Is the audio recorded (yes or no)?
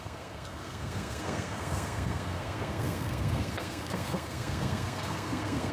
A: no